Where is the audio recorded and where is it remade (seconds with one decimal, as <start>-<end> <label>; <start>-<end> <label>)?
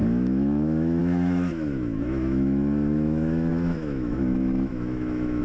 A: 0.0-5.4 remade